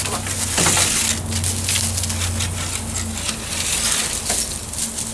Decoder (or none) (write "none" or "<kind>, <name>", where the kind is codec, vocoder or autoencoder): none